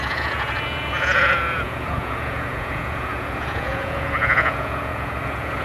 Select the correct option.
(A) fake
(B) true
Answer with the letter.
A